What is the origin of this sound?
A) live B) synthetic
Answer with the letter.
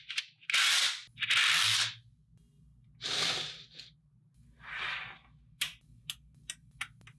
A